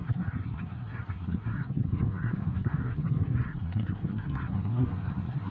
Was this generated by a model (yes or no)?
yes